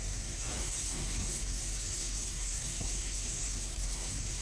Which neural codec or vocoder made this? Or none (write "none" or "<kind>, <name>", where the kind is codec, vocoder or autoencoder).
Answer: codec, SNAC